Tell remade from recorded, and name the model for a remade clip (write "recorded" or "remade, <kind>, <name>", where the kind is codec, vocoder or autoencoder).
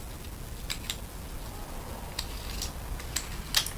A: recorded